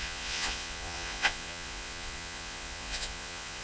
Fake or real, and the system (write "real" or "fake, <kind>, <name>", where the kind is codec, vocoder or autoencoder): fake, vocoder, Vocos